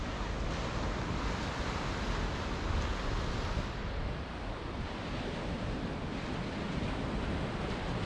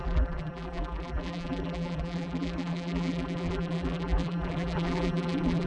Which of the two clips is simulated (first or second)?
second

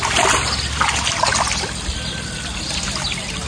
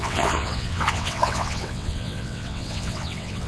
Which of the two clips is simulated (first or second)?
second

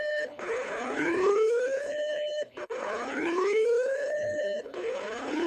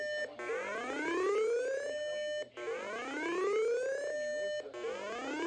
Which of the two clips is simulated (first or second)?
first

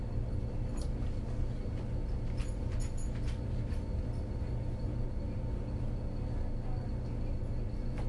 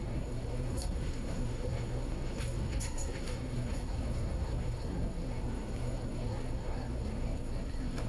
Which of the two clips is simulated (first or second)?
second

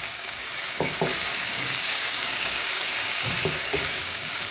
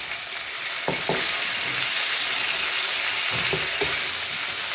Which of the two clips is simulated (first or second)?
first